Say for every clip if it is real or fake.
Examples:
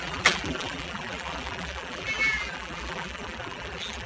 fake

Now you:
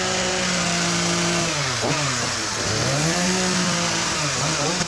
fake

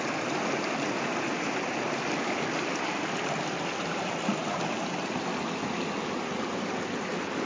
real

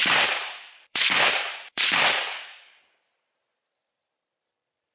fake